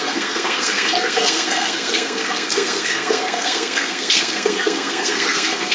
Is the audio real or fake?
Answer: fake